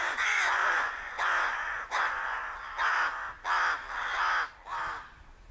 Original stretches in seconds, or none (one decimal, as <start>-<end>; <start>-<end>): 2.4-5.5